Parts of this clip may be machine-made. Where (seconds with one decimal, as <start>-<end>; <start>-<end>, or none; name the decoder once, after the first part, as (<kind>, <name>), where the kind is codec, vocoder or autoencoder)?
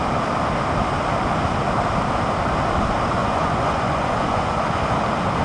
3.2-4.8 (vocoder, Vocos)